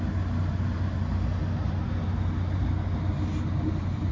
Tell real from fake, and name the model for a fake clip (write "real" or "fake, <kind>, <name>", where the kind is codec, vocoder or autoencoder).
real